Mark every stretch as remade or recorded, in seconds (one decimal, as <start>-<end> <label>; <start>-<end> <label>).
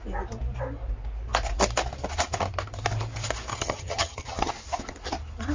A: 0.0-3.5 recorded; 3.5-4.5 remade; 4.5-5.5 recorded